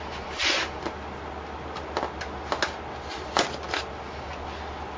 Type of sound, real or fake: real